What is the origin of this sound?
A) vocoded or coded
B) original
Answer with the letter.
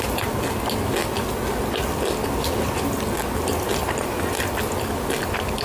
B